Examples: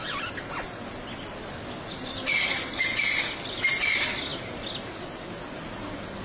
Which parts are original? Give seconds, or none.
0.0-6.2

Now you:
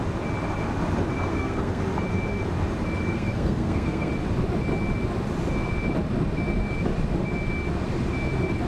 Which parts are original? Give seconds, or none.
0.0-1.3; 1.8-3.1; 4.1-8.7

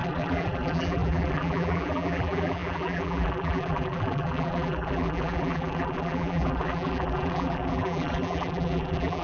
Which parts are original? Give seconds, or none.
none

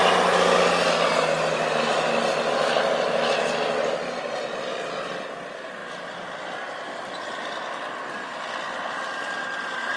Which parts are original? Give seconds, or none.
0.0-10.0